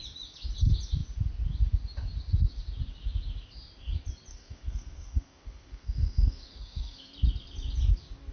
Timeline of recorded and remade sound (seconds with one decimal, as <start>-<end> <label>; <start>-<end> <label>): 0.0-4.3 recorded; 4.3-7.1 remade; 7.1-8.3 recorded